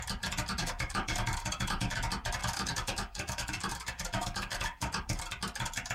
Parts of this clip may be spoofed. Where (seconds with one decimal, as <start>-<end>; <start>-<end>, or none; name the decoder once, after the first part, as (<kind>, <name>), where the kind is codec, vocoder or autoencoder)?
0.6-1.9 (codec, DAC); 2.4-5.2